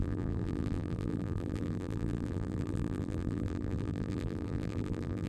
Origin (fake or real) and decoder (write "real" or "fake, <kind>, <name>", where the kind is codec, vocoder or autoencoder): fake, vocoder, BigVGAN v2